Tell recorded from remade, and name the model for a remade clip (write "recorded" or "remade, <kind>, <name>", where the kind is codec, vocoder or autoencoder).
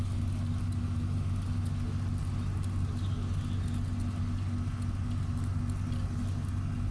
recorded